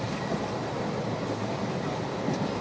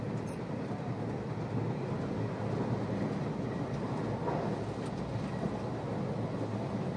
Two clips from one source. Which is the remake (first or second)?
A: first